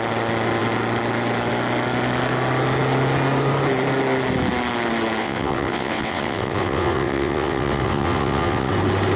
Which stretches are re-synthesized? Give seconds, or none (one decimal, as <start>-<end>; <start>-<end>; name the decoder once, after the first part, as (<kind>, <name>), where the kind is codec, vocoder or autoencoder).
5.2-8.7 (vocoder, WaveNeXt)